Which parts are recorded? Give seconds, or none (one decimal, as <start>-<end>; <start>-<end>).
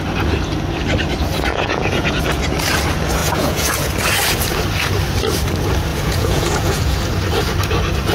0.0-1.5; 2.2-3.2; 3.9-5.9; 7.0-8.1